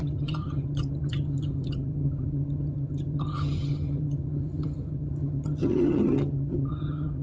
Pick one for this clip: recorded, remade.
remade